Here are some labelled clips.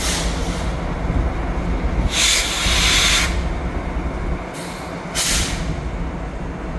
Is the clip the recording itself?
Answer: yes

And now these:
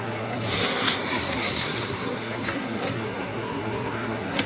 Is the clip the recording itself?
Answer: no